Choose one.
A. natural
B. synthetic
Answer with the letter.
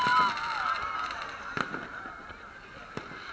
A